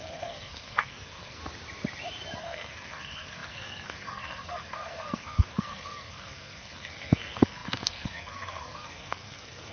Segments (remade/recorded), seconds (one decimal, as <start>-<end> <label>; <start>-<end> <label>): 0.0-1.4 remade; 1.4-2.4 recorded; 2.4-9.7 remade